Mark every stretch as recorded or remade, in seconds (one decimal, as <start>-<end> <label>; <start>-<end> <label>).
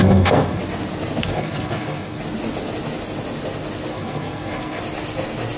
0.0-0.6 remade; 0.6-1.2 recorded; 1.2-2.2 remade; 2.2-3.9 recorded; 3.9-4.8 remade; 4.8-5.6 recorded